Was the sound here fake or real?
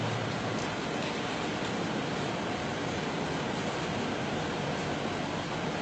real